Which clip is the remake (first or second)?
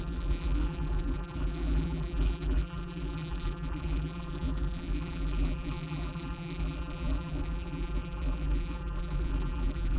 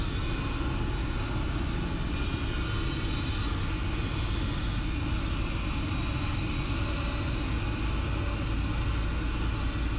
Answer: first